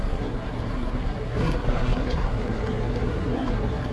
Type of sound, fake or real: fake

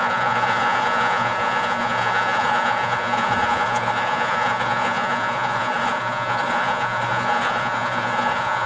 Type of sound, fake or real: fake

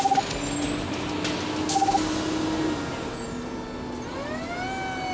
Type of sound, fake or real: real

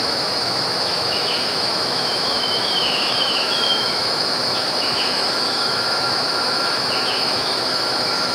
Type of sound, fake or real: fake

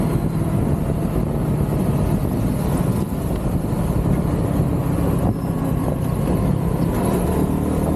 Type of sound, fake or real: real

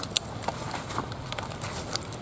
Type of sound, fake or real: real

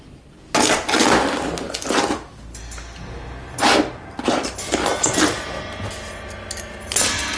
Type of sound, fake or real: real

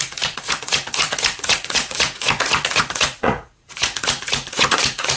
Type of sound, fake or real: fake